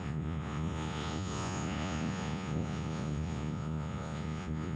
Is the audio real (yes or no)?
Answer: no